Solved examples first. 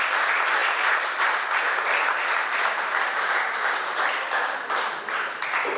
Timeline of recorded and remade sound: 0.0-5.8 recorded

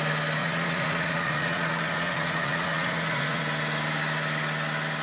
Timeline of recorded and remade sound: 0.0-0.4 recorded; 0.4-3.4 remade; 3.4-5.0 recorded